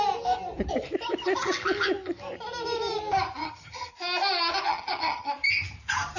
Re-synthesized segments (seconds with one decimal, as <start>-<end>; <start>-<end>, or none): 3.4-3.9; 4.7-5.3